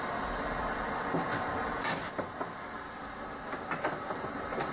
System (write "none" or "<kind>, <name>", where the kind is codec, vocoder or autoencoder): none